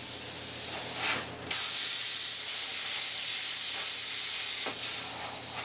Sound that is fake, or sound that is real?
real